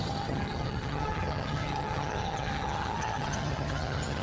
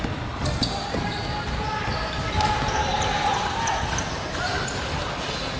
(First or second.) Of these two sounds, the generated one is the first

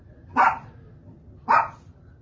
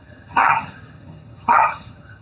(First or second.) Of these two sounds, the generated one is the second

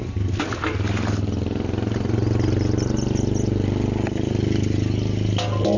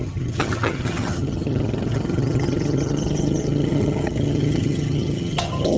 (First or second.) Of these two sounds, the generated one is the second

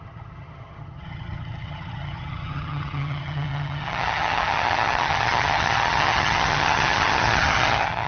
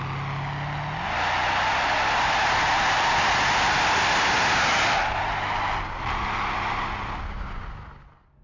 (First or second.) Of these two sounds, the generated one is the first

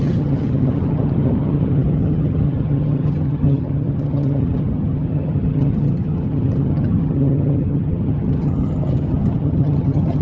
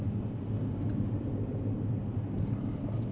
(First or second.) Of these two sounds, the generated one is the first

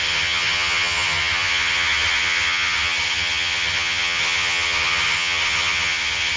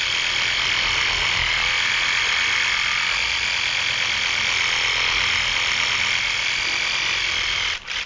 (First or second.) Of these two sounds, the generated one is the first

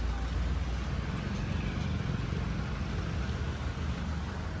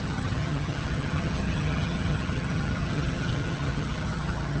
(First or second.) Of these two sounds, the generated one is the second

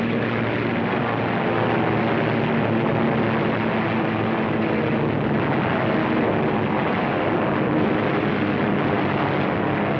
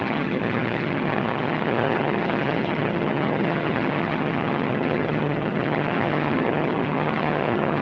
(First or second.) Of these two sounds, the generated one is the second